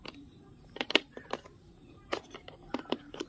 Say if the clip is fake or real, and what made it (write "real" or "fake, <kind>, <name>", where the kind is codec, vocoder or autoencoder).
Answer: fake, vocoder, BigVGAN v2